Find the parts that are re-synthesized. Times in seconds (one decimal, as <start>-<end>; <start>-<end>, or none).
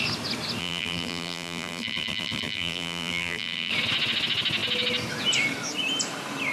0.6-3.7